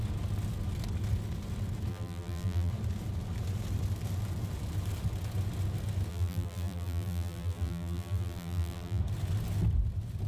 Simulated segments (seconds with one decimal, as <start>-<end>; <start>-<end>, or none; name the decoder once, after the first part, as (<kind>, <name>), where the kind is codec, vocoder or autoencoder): 1.9-2.7 (vocoder, BigVGAN v2); 6.1-9.0